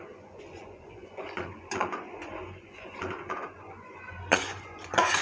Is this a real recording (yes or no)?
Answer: no